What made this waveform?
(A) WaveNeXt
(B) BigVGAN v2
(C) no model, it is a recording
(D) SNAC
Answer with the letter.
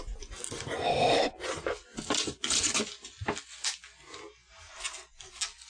C